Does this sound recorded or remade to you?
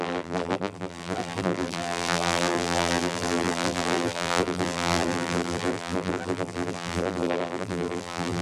remade